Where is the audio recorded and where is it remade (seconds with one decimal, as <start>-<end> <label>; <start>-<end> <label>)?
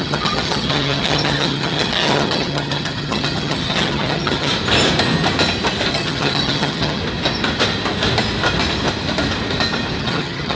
0.0-4.5 remade; 4.5-5.9 recorded; 5.9-7.0 remade; 7.0-10.0 recorded; 10.0-10.6 remade